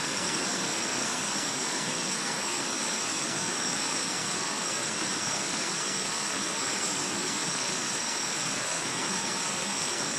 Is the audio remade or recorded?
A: remade